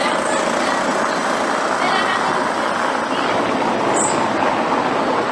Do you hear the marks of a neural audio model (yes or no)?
no